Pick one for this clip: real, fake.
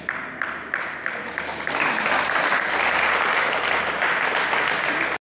real